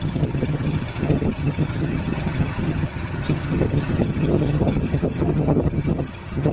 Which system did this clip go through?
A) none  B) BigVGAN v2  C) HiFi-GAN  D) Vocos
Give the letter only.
C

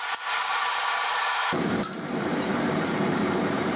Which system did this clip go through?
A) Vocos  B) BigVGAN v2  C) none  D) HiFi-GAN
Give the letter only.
B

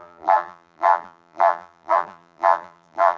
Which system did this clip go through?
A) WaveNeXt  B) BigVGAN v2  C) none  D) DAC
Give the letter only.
B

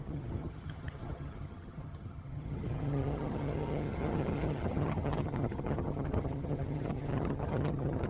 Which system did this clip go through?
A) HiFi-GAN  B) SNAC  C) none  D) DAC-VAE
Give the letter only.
A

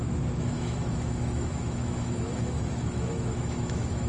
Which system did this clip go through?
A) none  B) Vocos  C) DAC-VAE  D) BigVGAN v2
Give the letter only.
C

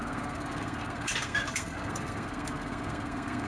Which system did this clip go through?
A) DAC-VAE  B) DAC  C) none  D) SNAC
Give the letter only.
D